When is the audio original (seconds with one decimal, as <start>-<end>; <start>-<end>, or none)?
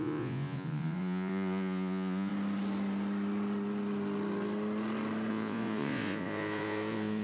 2.3-5.3